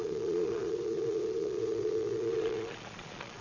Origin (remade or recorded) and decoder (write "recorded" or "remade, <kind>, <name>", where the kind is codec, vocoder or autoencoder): remade, vocoder, Vocos